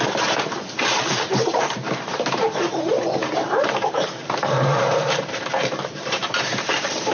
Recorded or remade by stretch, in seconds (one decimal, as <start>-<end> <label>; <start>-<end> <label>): 0.0-7.1 remade